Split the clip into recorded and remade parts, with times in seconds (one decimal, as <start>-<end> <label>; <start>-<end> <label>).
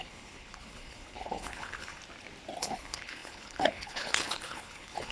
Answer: 0.0-2.0 remade; 2.0-2.6 recorded; 2.6-5.1 remade